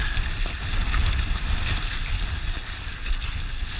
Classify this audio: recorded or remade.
recorded